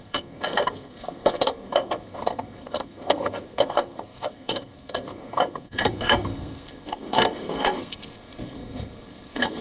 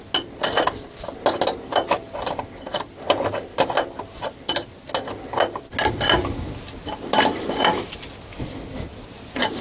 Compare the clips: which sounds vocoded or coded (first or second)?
first